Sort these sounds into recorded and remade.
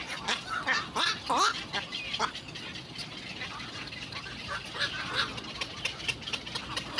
recorded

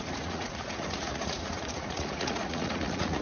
remade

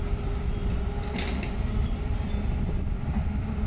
remade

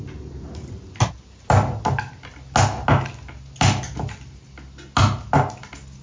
recorded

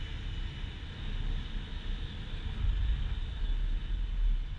recorded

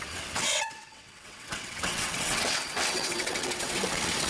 remade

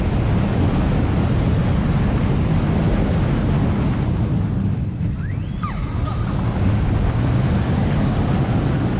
recorded